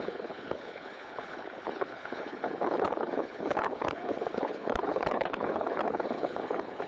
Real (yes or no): no